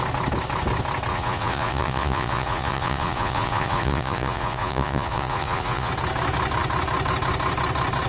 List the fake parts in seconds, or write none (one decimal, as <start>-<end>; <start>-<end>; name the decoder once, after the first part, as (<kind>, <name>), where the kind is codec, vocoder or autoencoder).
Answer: 1.1-5.9 (vocoder, Vocos)

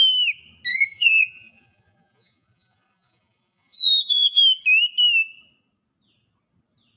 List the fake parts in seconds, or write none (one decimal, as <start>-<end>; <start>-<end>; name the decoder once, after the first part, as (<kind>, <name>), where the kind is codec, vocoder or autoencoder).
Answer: 0.7-4.4 (vocoder, Vocos)